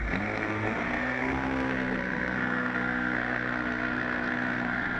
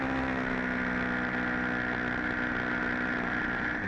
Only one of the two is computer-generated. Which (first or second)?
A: first